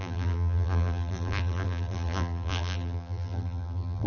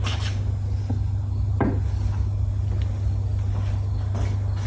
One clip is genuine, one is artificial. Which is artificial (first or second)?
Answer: first